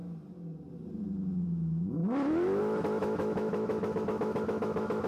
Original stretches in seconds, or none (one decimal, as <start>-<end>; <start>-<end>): 0.0-1.4; 2.0-2.6